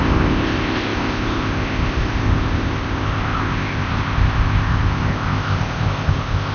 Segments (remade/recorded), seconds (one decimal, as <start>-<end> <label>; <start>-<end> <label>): 0.0-6.5 remade